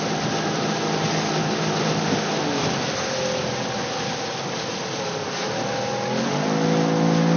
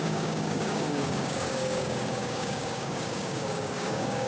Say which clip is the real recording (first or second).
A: first